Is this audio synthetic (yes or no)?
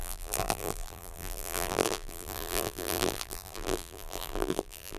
yes